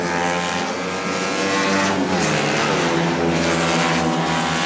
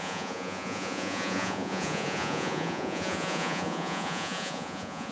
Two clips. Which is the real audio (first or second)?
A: first